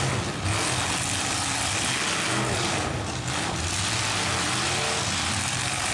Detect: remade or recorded recorded